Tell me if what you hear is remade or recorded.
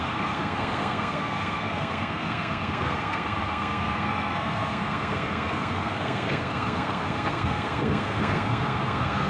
remade